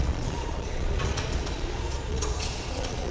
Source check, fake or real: fake